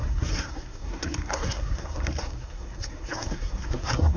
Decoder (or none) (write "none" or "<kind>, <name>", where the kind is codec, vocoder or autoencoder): codec, SNAC